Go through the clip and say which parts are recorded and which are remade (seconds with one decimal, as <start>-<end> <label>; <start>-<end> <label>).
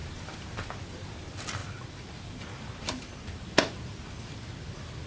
0.0-0.8 remade; 0.8-1.6 recorded; 1.6-3.4 remade; 3.4-3.9 recorded; 3.9-4.6 remade; 4.6-5.1 recorded